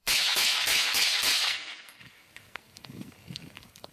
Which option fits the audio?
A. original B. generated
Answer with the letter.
B